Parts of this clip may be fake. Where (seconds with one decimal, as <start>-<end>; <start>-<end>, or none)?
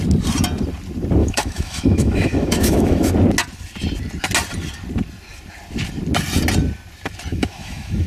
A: 1.2-3.1; 7.3-8.1